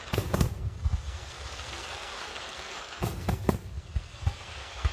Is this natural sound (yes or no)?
no